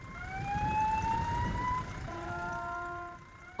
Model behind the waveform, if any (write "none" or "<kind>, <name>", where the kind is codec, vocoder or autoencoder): vocoder, BigVGAN v2